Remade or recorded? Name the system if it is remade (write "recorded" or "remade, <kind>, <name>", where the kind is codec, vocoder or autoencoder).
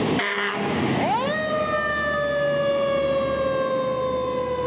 recorded